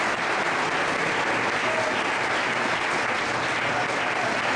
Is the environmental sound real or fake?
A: real